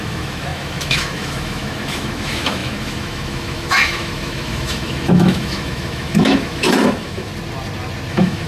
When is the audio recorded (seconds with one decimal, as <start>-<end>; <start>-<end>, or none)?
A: 7.3-8.1